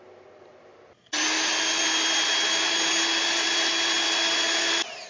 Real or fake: real